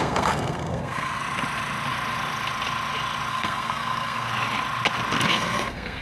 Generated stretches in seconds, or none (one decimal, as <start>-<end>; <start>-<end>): 0.0-1.2; 3.3-4.3; 5.3-6.0